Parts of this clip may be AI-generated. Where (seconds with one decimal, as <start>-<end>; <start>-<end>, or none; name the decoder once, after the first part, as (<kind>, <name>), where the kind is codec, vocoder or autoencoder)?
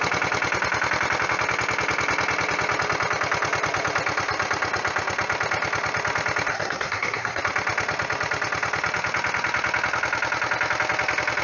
6.5-7.4 (codec, SNAC)